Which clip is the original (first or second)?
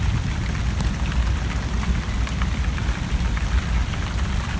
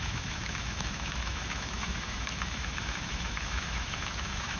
first